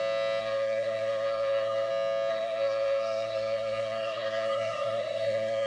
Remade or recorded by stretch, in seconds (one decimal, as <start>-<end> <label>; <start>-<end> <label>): 0.0-0.4 recorded; 0.4-1.9 remade; 1.9-2.3 recorded; 2.3-5.7 remade